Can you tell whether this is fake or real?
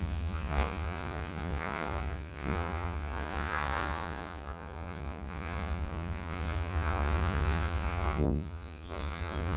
fake